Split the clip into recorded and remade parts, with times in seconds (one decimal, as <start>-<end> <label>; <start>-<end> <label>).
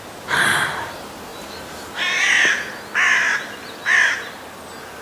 0.0-5.0 recorded